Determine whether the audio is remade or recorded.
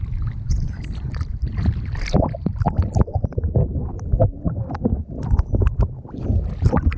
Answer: recorded